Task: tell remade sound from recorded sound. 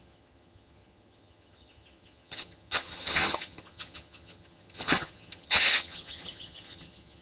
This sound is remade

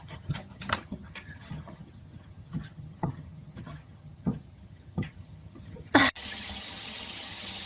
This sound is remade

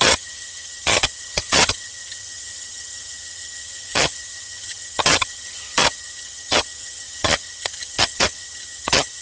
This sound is remade